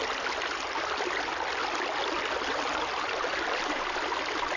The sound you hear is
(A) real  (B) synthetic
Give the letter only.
A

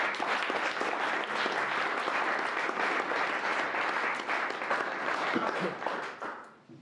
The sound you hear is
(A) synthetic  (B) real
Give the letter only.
B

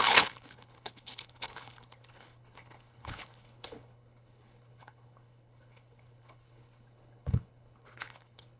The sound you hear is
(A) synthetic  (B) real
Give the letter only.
A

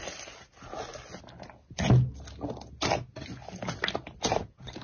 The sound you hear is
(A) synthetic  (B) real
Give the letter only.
B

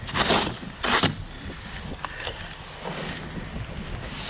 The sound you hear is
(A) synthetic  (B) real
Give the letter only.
B